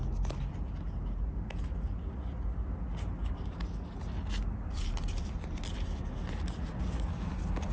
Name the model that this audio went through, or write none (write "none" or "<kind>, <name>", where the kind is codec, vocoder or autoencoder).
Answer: none